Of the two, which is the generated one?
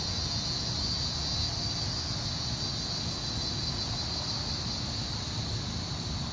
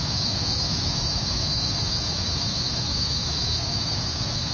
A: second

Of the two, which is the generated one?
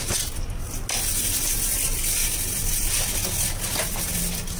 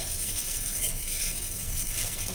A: second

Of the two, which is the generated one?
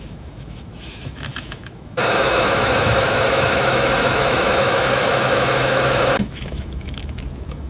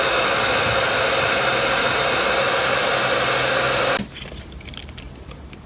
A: first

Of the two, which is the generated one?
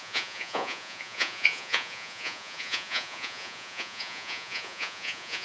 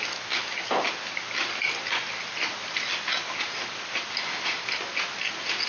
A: first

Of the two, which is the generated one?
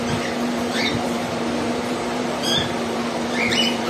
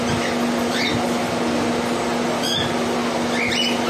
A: first